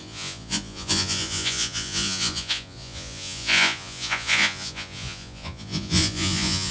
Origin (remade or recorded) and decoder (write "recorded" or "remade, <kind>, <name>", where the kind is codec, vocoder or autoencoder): remade, vocoder, Vocos